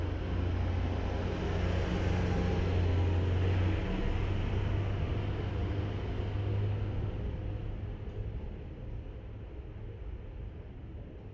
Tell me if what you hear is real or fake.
real